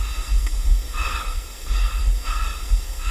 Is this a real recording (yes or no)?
no